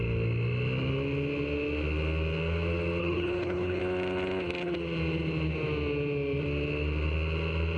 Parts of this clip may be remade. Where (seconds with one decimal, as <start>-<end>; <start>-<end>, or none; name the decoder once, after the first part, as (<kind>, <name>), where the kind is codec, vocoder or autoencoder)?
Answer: 3.0-3.8 (codec, HILCodec)